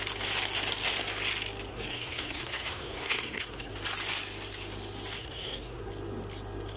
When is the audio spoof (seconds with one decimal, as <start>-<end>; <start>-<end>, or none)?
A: 1.7-3.7; 5.2-5.9

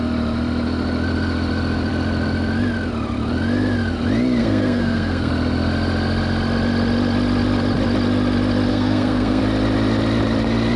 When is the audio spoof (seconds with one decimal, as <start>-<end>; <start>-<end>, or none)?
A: 4.4-5.3; 8.7-9.4